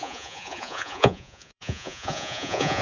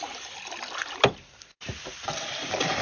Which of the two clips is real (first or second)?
second